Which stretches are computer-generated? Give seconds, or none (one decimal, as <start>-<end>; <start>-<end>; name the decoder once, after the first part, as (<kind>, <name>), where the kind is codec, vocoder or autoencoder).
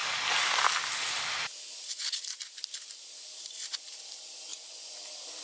none